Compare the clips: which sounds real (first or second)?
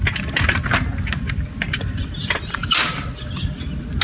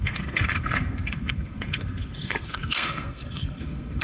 first